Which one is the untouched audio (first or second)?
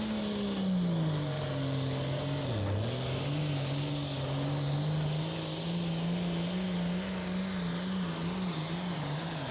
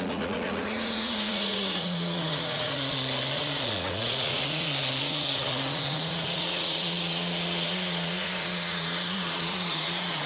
first